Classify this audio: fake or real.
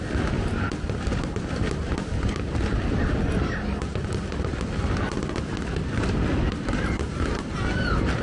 real